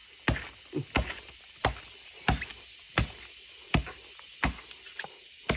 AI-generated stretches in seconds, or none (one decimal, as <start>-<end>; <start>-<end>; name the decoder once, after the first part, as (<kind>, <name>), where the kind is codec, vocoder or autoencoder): none